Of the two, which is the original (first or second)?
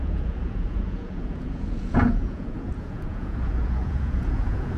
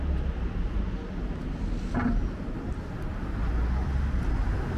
second